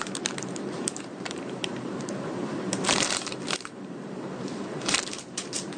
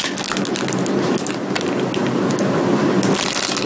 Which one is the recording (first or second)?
second